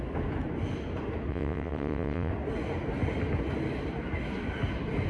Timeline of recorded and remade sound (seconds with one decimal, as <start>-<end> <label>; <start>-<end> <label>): 0.0-1.3 recorded; 1.3-2.3 remade; 2.3-5.1 recorded